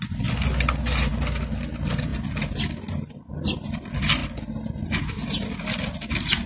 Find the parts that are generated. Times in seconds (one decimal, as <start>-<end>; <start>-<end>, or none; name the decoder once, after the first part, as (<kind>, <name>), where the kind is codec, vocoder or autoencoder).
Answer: none